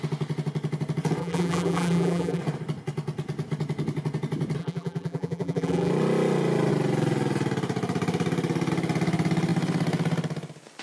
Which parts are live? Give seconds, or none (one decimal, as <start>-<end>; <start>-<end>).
0.0-1.2; 2.4-4.6; 5.9-10.8